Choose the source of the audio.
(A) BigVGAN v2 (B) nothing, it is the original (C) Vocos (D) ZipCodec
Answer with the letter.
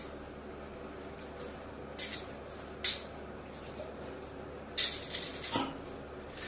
B